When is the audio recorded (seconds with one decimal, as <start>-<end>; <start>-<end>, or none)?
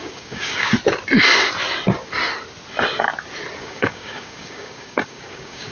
0.7-3.6